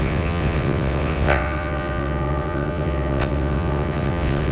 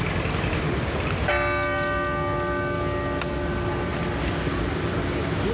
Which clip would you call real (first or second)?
second